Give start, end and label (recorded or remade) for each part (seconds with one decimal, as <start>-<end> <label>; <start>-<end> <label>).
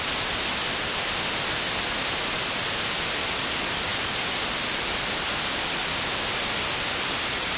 0.0-7.6 recorded